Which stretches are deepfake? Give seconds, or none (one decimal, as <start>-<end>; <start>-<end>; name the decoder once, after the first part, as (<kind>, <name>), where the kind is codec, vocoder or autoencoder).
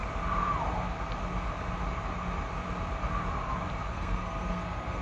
3.9-5.0 (codec, SNAC)